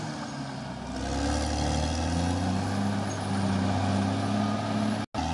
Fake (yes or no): no